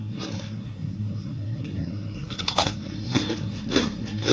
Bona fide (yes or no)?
no